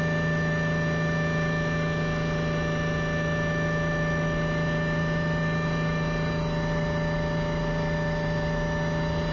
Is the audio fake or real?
real